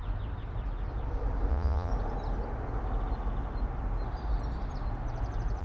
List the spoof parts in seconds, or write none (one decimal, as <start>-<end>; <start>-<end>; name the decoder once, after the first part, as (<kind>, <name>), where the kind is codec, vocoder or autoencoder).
1.5-1.9 (vocoder, Vocos)